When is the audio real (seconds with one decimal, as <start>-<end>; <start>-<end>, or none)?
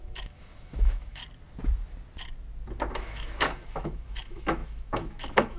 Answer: 1.2-2.9